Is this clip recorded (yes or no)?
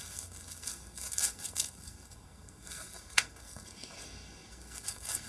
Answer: no